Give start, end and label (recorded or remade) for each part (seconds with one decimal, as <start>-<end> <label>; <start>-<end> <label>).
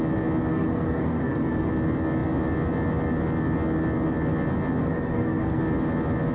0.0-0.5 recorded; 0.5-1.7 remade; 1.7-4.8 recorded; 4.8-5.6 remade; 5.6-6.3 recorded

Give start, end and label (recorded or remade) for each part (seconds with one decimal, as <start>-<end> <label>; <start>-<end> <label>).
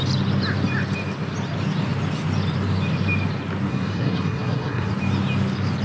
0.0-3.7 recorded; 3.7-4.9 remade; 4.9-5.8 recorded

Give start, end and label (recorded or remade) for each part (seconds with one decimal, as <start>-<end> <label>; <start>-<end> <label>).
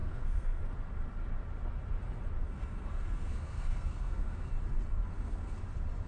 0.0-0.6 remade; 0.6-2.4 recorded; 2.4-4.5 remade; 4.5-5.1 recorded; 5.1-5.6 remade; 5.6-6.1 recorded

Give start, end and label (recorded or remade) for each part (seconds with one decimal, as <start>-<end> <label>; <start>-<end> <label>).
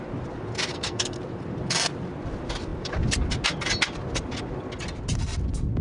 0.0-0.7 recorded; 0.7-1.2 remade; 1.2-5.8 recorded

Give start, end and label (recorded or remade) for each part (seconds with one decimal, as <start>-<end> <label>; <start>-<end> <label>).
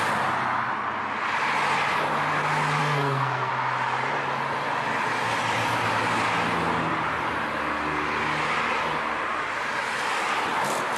0.0-2.8 recorded; 2.8-3.5 remade; 3.5-11.0 recorded